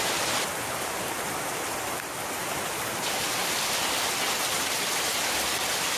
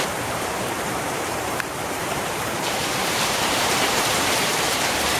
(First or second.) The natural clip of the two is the first